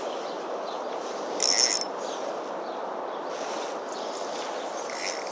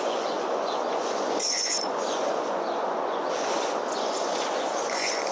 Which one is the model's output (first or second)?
second